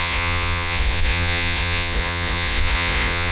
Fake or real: fake